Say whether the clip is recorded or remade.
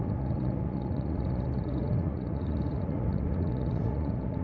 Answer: remade